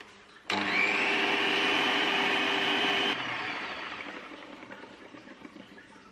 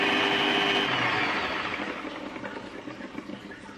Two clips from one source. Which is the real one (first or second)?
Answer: second